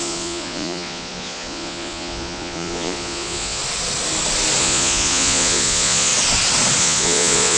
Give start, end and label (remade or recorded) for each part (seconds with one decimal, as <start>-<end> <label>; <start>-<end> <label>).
0.0-3.6 remade; 3.6-4.6 recorded; 4.6-6.1 remade; 6.1-6.8 recorded; 6.8-7.6 remade